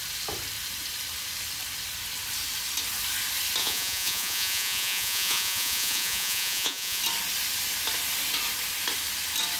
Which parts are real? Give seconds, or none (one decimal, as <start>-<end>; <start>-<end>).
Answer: 0.0-3.6; 7.0-9.6